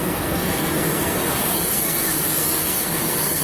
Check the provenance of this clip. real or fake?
fake